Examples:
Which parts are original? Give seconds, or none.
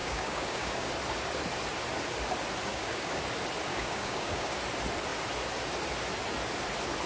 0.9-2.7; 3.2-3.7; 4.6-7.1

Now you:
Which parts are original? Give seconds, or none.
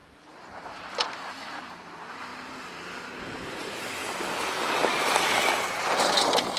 2.3-3.2; 4.0-4.8